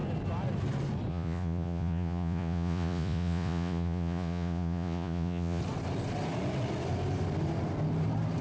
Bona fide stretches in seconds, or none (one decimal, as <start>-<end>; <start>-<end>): 0.0-1.1; 5.6-8.4